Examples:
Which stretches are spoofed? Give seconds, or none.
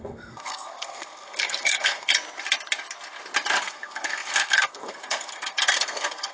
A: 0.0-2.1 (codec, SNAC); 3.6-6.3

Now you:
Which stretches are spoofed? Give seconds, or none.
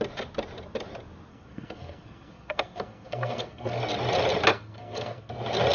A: 1.3-3.8 (codec, SNAC); 4.5-5.3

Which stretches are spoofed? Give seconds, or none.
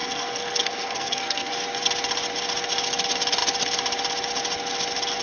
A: 0.0-1.5 (codec, SNAC)